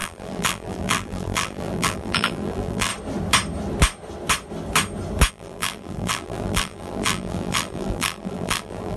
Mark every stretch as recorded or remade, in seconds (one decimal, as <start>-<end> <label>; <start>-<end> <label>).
0.0-2.9 remade; 2.9-5.3 recorded; 5.3-9.0 remade